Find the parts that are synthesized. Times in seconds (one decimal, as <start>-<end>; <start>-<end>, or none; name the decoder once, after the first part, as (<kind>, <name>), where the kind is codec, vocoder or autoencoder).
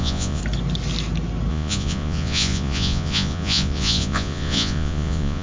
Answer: 0.0-0.4 (vocoder, Vocos); 1.5-5.4